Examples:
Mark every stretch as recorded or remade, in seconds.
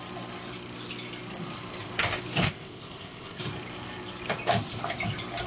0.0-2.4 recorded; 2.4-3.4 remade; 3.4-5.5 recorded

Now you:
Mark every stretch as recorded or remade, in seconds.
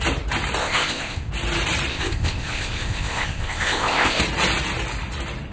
0.0-0.6 recorded; 0.6-1.3 remade; 1.3-1.9 recorded; 1.9-4.2 remade; 4.2-5.5 recorded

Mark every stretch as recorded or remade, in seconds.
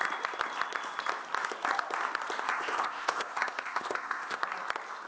0.0-2.5 recorded; 2.5-4.4 remade; 4.4-5.1 recorded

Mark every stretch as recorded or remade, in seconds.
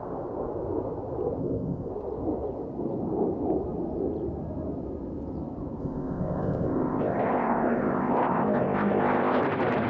0.0-1.4 recorded; 1.4-1.9 remade; 1.9-5.8 recorded; 5.8-9.4 remade; 9.4-9.9 recorded